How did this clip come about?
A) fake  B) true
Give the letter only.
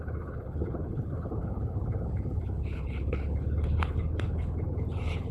A